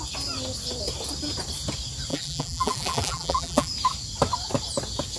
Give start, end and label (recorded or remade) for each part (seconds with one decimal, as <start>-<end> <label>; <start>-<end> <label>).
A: 0.0-2.1 recorded; 2.1-3.7 remade; 3.7-5.2 recorded